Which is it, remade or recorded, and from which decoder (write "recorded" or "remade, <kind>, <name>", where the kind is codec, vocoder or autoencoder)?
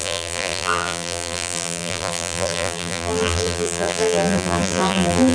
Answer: remade, vocoder, BigVGAN v2